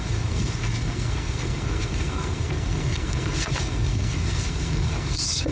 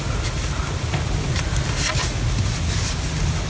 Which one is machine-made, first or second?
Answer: first